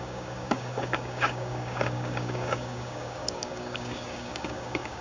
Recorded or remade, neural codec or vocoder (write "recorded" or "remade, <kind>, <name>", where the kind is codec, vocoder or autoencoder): remade, codec, DAC